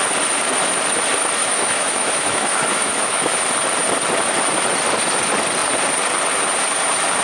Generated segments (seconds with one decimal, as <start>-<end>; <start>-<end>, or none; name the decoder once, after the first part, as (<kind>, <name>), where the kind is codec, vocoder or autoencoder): 1.4-3.4 (autoencoder, DAC-VAE)